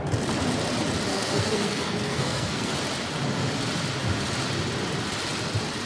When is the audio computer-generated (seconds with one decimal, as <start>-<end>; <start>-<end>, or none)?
1.1-2.7